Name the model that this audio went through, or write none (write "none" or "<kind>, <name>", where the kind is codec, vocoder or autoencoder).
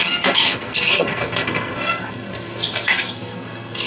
codec, SNAC